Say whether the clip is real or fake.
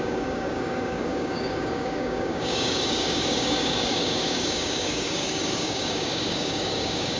fake